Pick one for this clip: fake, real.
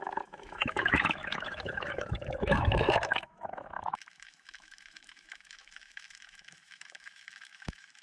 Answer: fake